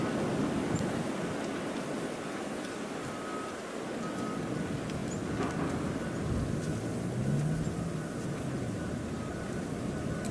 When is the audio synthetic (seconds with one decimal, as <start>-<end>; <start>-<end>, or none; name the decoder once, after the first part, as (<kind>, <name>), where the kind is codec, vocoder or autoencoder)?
none